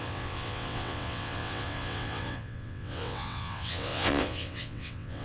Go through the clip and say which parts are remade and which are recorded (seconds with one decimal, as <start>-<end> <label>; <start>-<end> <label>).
0.0-5.2 remade